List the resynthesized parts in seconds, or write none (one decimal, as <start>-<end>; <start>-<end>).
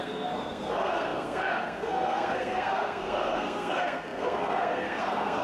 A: 0.0-5.4